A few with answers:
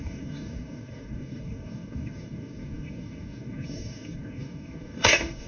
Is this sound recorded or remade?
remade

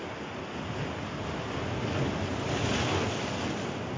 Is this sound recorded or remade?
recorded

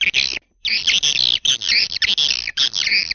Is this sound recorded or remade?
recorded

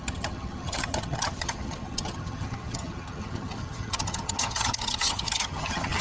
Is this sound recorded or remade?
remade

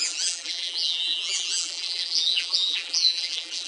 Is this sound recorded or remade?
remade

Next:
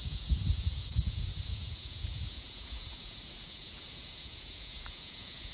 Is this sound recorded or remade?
remade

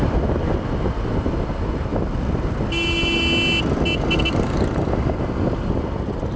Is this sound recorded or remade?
recorded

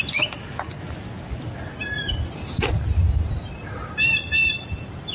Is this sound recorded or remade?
recorded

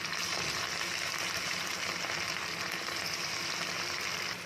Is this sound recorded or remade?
recorded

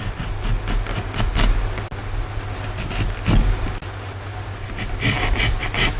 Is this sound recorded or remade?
recorded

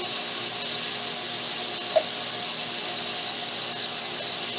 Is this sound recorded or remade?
recorded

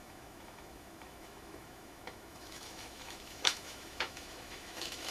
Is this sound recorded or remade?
remade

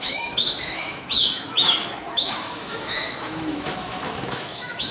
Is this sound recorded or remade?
remade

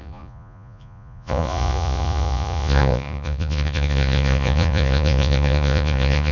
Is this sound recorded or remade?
remade